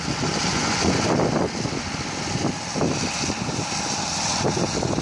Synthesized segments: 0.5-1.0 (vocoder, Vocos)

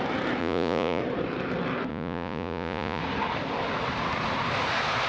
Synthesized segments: 0.4-1.0 (vocoder, Vocos); 1.9-3.0

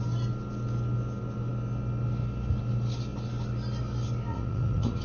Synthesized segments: 4.3-5.0 (vocoder, Vocos)

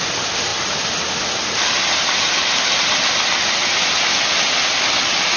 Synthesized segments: none

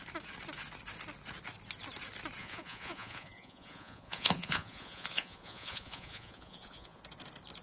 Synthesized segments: 2.4-7.0 (vocoder, Vocos)